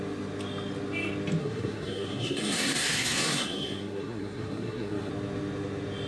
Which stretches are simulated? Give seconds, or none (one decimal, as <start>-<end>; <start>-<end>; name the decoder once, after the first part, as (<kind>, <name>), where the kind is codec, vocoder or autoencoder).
1.4-5.1 (codec, SNAC)

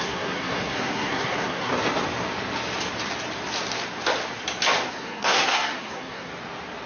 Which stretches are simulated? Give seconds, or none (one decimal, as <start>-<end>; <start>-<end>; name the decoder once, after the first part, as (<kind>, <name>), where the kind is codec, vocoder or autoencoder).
0.0-1.7 (codec, SNAC); 4.9-6.3